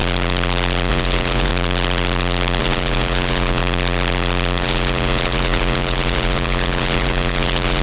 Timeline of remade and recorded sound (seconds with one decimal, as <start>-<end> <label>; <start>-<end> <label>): 0.0-0.9 recorded; 0.9-1.5 remade; 1.5-2.6 recorded; 2.6-3.6 remade; 3.6-4.6 recorded; 4.6-7.8 remade